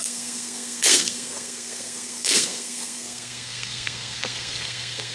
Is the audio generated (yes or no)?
yes